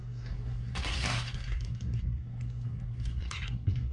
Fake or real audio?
fake